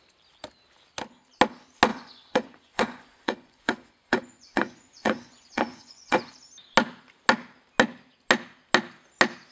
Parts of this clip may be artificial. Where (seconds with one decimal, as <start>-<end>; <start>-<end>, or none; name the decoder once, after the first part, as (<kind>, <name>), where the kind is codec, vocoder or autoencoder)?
1.9-6.3 (vocoder, Vocos)